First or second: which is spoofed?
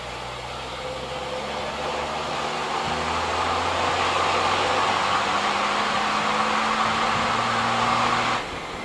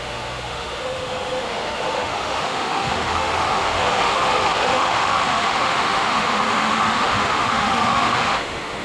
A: second